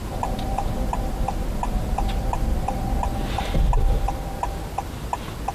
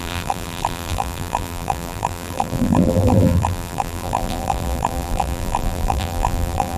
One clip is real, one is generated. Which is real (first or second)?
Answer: first